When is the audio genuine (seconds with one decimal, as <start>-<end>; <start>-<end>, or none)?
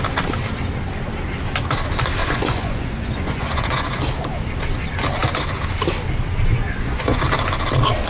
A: 0.0-2.2; 4.0-6.5; 7.2-8.1